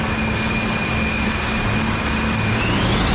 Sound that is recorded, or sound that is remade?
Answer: recorded